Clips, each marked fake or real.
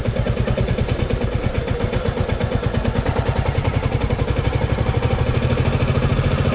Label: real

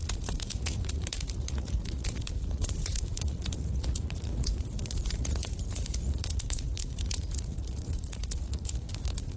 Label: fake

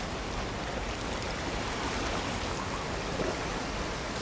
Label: real